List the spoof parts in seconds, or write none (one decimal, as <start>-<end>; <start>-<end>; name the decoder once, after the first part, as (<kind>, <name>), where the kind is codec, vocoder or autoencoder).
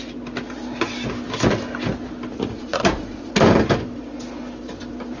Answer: 2.3-3.3 (vocoder, Vocos)